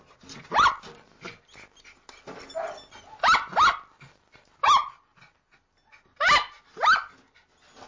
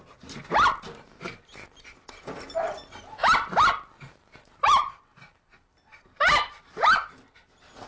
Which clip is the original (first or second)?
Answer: first